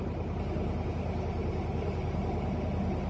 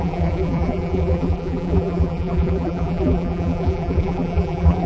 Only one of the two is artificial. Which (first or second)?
second